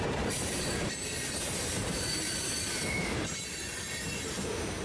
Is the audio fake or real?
fake